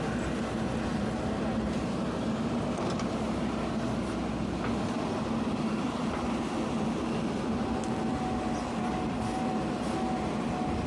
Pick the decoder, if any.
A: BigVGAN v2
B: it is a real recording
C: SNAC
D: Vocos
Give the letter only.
B